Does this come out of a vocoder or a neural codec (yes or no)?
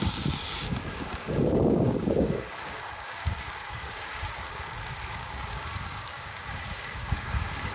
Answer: yes